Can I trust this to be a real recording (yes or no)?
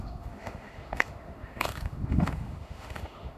no